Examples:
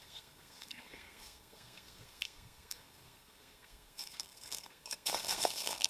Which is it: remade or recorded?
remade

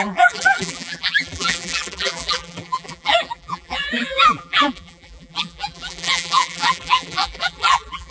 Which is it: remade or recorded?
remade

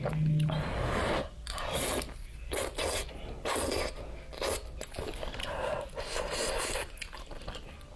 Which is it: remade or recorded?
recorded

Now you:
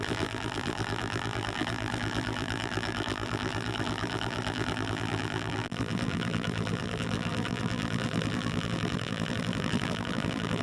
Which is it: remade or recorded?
remade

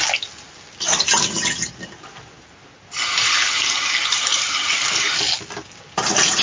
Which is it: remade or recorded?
recorded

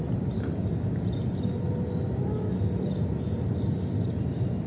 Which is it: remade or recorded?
recorded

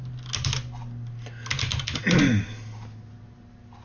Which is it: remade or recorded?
recorded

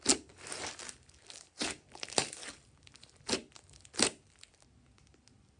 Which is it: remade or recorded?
recorded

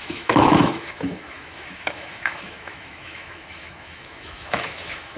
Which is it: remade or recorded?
remade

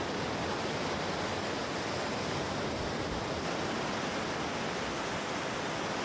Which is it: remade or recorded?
recorded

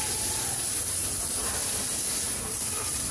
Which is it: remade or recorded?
recorded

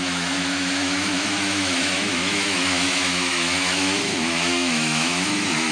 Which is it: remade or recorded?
remade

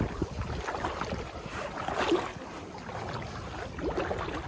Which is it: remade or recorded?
recorded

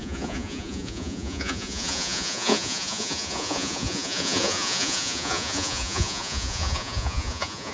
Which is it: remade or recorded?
remade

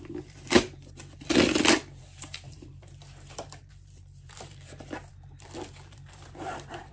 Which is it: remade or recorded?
remade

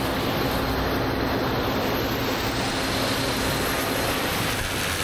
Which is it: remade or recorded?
recorded